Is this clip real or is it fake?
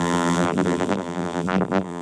fake